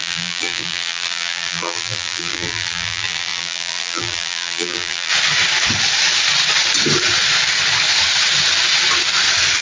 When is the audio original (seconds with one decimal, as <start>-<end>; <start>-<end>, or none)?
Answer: 5.1-9.6